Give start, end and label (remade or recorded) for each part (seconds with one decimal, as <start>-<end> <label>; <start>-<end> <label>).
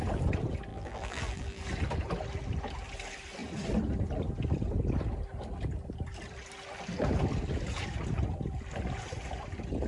0.0-0.7 recorded; 0.7-1.6 remade; 1.6-9.9 recorded